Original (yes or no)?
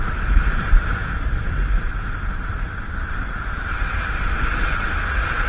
yes